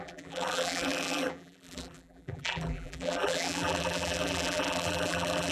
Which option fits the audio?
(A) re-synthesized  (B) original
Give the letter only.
A